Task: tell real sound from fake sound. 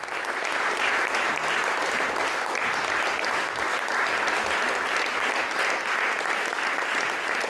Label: real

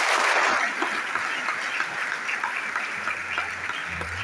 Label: fake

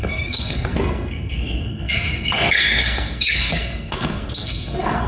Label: fake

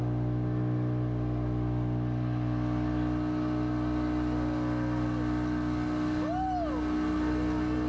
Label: real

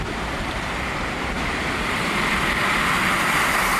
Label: fake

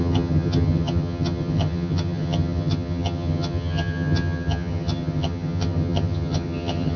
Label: fake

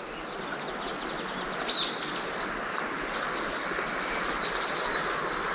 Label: real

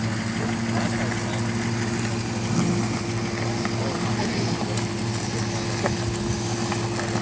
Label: real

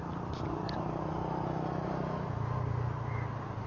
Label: real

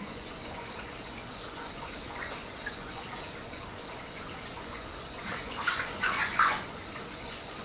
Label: fake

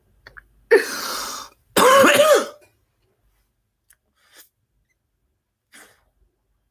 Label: real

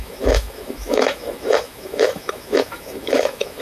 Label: fake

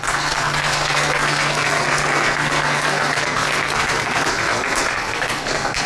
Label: fake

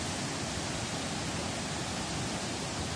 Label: real